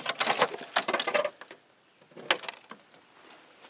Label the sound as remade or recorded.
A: recorded